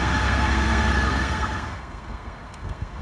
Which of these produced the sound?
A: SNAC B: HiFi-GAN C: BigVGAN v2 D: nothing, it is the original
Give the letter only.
A